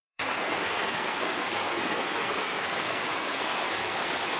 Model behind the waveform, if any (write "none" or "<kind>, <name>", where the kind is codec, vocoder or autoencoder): codec, SNAC